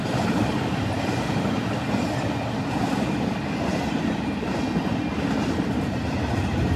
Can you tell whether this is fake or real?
real